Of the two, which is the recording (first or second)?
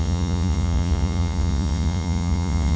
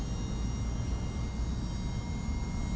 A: second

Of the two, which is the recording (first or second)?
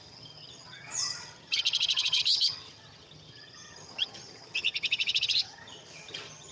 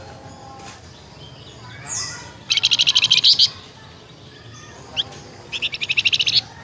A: second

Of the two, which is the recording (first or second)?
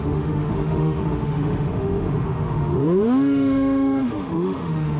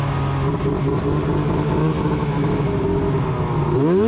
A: second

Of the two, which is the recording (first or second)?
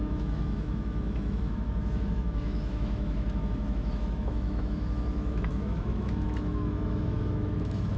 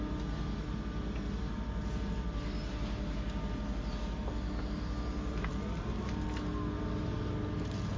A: second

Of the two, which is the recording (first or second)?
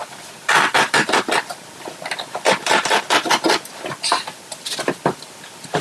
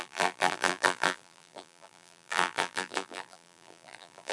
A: first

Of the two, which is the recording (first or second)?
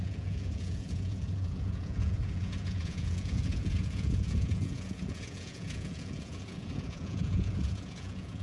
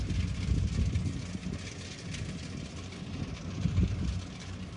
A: second